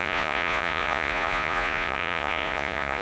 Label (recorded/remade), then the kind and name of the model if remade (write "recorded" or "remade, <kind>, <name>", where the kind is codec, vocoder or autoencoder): remade, vocoder, Vocos